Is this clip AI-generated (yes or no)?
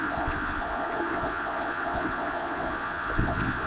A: yes